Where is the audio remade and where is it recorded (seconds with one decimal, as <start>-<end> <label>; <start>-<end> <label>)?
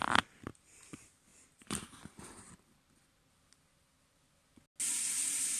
0.0-5.6 recorded